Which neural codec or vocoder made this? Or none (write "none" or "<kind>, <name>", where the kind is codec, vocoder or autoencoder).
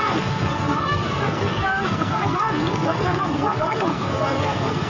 codec, SNAC